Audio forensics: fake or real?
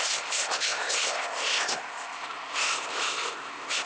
fake